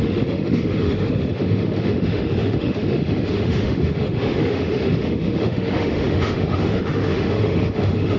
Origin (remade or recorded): remade